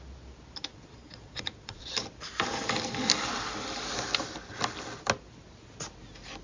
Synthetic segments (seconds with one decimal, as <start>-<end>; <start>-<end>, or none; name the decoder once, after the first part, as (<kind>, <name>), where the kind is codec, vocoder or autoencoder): 0.7-1.8 (vocoder, Vocos)